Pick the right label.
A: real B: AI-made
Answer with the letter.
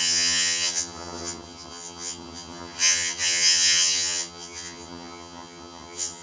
B